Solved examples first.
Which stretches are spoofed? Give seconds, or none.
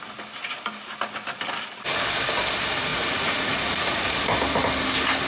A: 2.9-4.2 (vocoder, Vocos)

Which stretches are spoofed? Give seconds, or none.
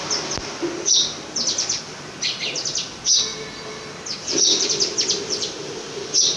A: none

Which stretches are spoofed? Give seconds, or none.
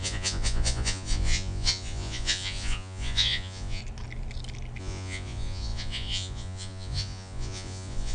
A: 0.0-3.8 (vocoder, Vocos); 4.8-8.1